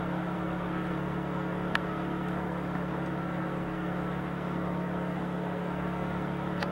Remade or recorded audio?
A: remade